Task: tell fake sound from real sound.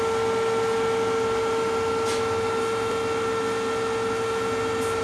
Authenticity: real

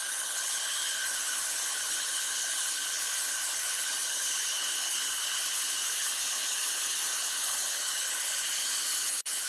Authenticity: fake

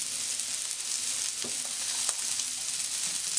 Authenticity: real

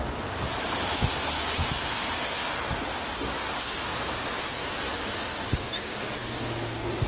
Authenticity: real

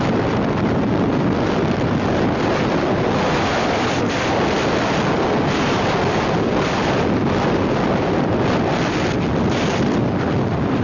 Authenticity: real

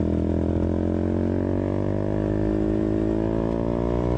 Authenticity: real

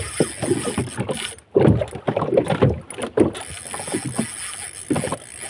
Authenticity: real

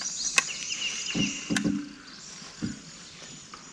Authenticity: real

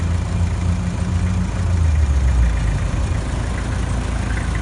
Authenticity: real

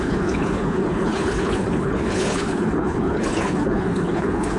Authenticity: fake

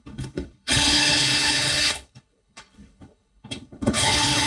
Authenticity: fake